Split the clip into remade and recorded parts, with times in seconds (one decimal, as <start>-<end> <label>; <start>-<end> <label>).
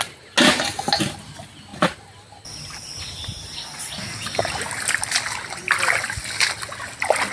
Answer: 0.0-7.3 recorded